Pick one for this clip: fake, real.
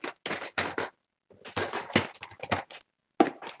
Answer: real